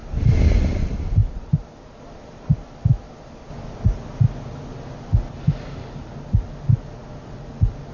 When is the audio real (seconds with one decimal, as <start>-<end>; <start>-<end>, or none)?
2.9-3.6; 7.0-7.5